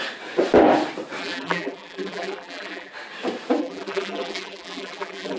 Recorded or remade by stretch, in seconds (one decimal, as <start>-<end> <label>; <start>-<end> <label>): 0.0-1.2 recorded; 1.2-2.9 remade; 2.9-3.6 recorded; 3.6-5.4 remade